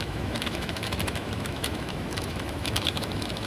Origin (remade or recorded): remade